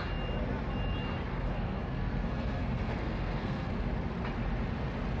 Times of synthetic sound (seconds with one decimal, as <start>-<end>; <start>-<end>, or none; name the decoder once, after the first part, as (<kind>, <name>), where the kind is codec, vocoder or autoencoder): 1.3-3.7 (codec, SNAC)